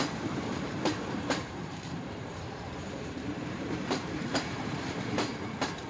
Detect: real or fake fake